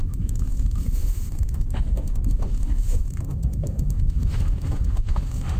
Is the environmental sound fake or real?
fake